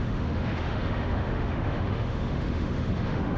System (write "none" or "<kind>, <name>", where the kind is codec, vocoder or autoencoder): autoencoder, DAC-VAE